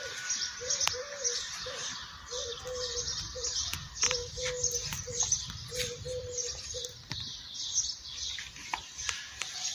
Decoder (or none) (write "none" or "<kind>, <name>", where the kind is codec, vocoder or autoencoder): vocoder, BigVGAN v2